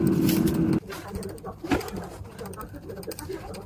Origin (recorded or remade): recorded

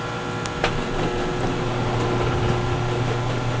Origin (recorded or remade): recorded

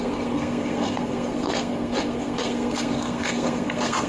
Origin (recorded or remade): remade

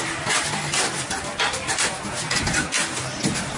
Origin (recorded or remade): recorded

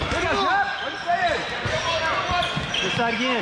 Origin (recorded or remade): recorded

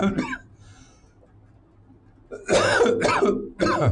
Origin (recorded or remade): recorded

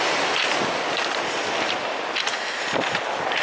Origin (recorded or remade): recorded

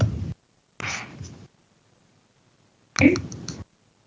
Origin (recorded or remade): recorded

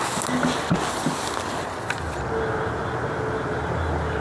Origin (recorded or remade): recorded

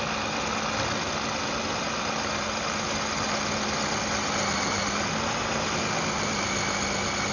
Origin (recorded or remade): recorded